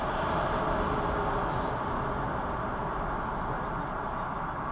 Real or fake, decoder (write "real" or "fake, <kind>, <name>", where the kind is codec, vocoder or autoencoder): real